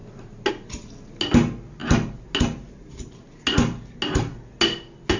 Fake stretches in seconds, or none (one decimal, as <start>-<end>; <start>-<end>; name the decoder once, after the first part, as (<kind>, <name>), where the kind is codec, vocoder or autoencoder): none